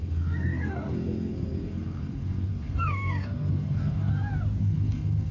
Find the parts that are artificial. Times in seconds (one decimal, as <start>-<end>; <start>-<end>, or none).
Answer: 0.0-4.1; 4.6-5.3